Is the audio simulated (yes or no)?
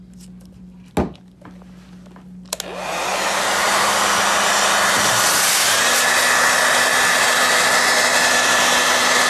no